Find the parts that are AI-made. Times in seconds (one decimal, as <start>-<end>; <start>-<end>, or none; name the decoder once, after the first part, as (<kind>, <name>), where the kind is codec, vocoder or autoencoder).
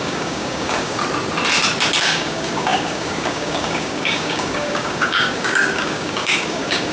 0.0-1.0 (codec, DAC); 2.0-6.9